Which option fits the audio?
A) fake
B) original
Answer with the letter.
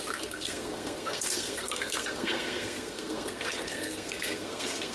A